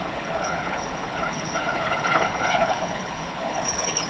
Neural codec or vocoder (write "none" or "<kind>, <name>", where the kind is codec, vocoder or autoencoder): codec, HILCodec